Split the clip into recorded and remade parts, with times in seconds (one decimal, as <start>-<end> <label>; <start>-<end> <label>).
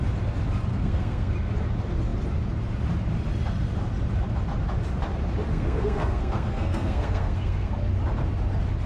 0.0-0.7 recorded; 0.7-1.3 remade; 1.3-5.5 recorded; 5.5-7.7 remade; 7.7-8.9 recorded